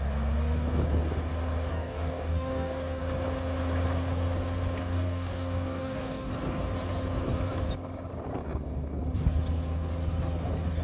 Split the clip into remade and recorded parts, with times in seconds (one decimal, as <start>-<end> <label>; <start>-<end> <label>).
0.0-1.7 recorded; 1.7-3.0 remade; 3.0-4.8 recorded; 4.8-6.3 remade; 6.3-8.4 recorded; 8.4-9.0 remade; 9.0-10.8 recorded

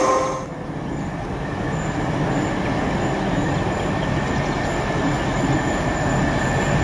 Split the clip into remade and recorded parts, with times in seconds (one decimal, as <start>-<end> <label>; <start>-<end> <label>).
0.0-6.8 recorded

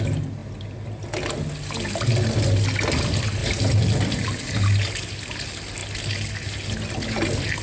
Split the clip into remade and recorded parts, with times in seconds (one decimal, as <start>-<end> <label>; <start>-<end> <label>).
0.0-3.4 recorded; 3.4-4.9 remade; 4.9-7.6 recorded

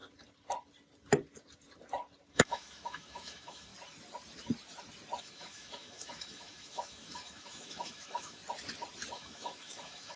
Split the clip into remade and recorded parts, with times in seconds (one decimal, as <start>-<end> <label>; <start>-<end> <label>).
0.0-2.3 recorded; 2.3-3.7 remade; 3.7-5.2 recorded; 5.2-8.4 remade; 8.4-9.1 recorded; 9.1-10.2 remade

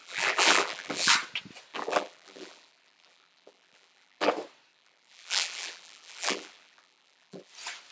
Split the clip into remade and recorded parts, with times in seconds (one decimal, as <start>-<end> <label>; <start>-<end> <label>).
0.0-1.1 remade; 1.1-1.7 recorded; 1.7-4.3 remade; 4.3-4.7 recorded; 4.7-7.5 remade; 7.5-7.9 recorded

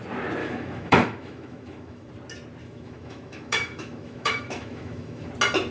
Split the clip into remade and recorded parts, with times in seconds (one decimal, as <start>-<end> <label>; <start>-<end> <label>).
0.0-0.4 recorded; 0.4-2.1 remade; 2.1-2.6 recorded; 2.6-5.3 remade; 5.3-5.7 recorded

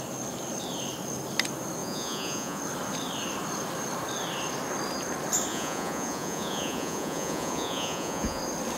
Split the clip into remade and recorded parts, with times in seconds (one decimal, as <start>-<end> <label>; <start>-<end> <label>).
0.0-1.8 recorded; 1.8-2.6 remade; 2.6-5.5 recorded; 5.5-8.4 remade; 8.4-8.8 recorded